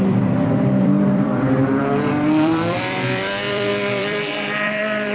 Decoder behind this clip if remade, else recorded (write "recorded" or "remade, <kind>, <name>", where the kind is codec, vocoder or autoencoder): remade, vocoder, BigVGAN v2